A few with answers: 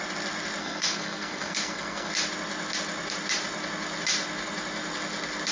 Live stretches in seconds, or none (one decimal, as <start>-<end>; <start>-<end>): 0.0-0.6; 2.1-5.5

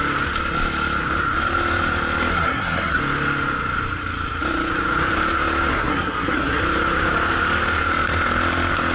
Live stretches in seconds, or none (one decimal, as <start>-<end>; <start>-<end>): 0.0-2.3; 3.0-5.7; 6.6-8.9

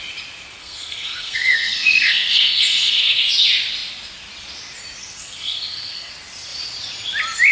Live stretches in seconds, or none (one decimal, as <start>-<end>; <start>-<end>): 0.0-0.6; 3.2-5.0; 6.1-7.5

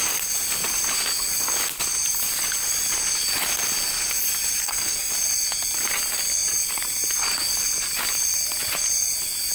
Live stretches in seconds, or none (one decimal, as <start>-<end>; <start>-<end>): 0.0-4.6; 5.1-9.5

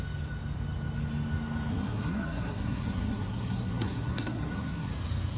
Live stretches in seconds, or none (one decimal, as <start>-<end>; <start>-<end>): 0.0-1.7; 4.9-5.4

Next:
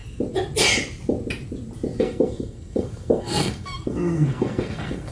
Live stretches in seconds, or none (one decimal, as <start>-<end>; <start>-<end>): 0.0-2.0

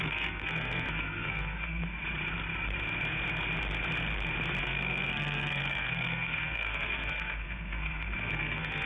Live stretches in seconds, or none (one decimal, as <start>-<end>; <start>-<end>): 1.8-4.6